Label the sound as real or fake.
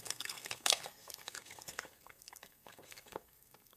fake